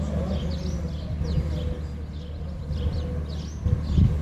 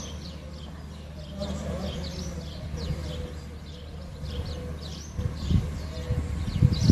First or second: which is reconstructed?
second